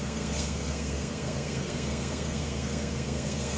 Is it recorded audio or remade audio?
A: remade